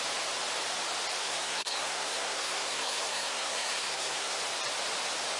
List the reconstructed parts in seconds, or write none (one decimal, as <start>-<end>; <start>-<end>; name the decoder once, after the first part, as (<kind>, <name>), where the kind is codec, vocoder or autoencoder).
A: 1.2-4.4 (codec, SNAC)